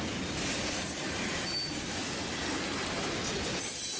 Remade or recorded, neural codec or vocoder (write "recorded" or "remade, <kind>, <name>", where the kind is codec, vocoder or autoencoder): recorded